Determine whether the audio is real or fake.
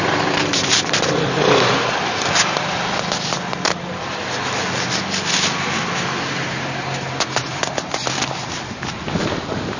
real